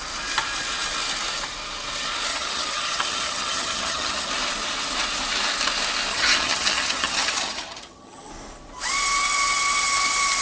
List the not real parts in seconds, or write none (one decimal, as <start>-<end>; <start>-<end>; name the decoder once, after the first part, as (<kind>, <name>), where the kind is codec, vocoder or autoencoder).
2.3-4.3 (vocoder, HiFi-GAN); 6.1-8.3